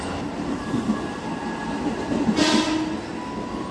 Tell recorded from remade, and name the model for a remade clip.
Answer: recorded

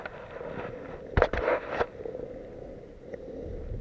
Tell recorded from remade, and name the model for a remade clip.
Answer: recorded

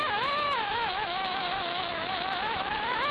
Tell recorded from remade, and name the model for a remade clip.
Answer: remade, autoencoder, DAC-VAE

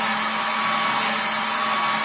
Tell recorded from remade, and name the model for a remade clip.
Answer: recorded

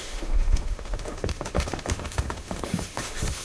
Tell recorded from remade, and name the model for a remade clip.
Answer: remade, autoencoder, DAC-VAE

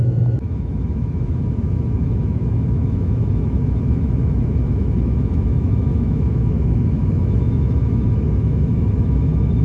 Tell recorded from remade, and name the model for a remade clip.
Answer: remade, autoencoder, DAC-VAE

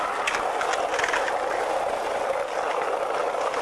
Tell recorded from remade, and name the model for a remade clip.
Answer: recorded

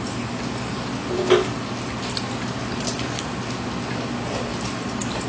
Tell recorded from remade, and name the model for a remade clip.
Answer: recorded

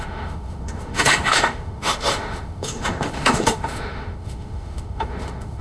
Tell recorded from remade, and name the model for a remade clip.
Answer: remade, autoencoder, DAC-VAE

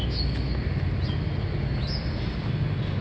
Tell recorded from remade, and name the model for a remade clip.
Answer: recorded